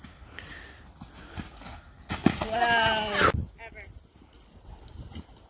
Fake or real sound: real